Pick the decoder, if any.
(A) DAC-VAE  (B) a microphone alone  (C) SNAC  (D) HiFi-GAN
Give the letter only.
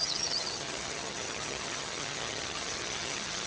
D